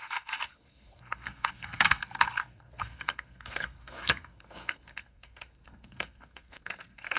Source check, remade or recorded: remade